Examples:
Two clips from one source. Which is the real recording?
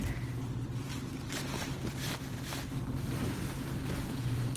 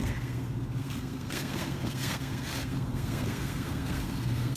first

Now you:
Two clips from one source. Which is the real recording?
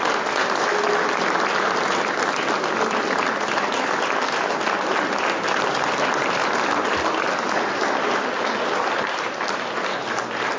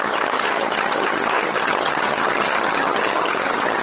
first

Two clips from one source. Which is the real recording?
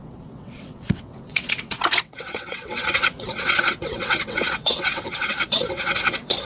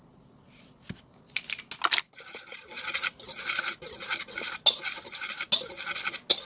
second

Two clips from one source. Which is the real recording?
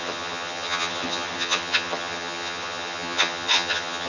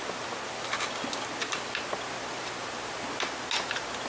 second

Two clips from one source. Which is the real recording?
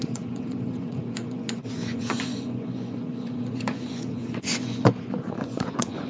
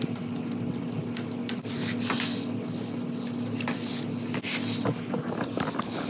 second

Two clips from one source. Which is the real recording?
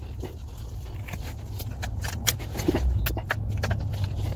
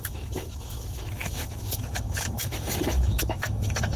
first